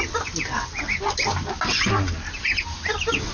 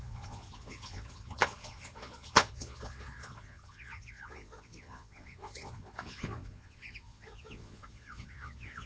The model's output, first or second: second